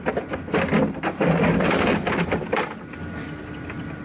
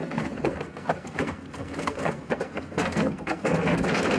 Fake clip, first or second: second